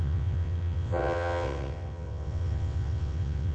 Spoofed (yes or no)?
yes